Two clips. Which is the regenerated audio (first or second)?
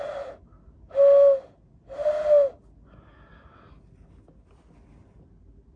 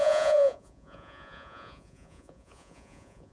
second